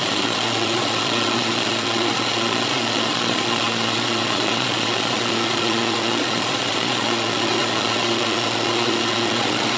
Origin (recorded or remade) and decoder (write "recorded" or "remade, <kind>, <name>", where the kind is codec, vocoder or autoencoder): remade, vocoder, Vocos